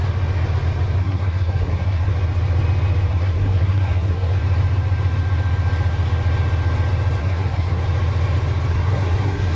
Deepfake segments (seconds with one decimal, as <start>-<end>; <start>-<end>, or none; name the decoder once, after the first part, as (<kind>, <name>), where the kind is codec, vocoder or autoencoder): 1.0-2.1 (codec, SNAC); 3.1-4.4; 7.2-7.8; 8.7-9.6